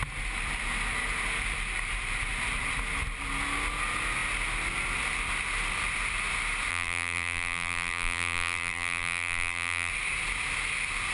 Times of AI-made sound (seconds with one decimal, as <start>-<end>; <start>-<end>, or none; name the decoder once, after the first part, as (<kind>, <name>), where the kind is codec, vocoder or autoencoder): 6.7-9.9 (vocoder, BigVGAN v2)